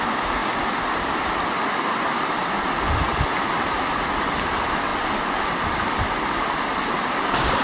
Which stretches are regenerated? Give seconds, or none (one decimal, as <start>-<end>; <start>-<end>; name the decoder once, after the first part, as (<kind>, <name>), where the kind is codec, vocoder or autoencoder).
0.4-1.7 (vocoder, BigVGAN v2)